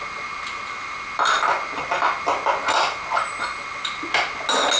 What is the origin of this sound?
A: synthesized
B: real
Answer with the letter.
B